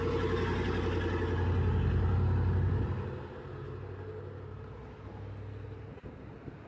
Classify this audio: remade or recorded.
recorded